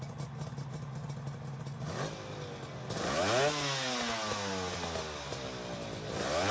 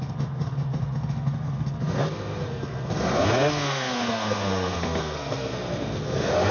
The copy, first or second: second